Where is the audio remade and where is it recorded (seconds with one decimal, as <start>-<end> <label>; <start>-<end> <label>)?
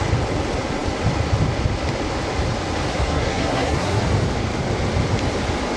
0.0-2.9 recorded; 2.9-4.0 remade; 4.0-5.8 recorded